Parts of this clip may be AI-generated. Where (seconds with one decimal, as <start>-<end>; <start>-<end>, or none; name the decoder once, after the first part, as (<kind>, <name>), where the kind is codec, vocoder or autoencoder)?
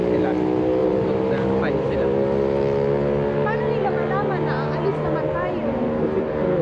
0.8-2.0 (vocoder, BigVGAN v2); 4.9-6.6